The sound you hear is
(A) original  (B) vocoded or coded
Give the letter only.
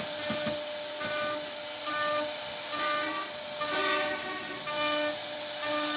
A